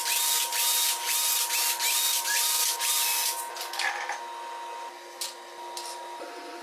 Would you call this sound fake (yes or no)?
no